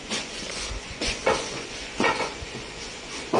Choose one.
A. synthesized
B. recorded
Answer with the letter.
A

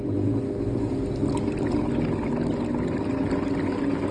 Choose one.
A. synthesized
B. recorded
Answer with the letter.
B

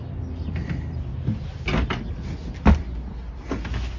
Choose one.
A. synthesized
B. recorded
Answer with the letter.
B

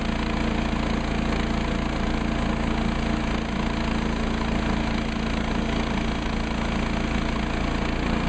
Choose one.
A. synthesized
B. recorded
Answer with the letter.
B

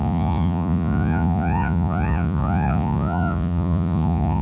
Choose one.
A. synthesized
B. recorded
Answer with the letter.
A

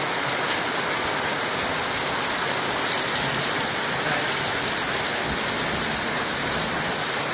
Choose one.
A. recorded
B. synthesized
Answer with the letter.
A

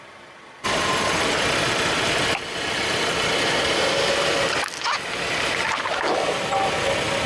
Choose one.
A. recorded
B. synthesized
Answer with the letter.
A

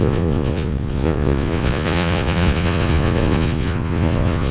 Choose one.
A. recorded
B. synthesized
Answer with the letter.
B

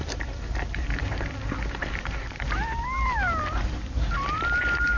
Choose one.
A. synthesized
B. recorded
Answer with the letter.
B